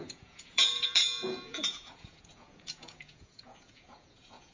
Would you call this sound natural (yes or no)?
no